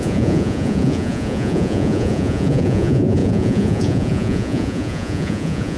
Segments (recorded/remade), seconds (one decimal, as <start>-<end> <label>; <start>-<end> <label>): 0.0-5.8 remade